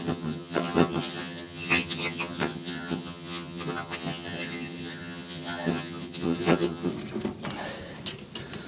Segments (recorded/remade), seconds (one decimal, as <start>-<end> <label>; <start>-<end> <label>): 0.0-6.9 remade; 6.9-8.7 recorded